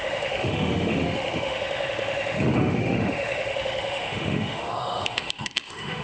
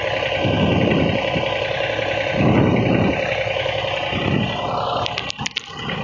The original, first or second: second